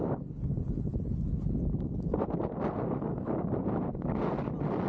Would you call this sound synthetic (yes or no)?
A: no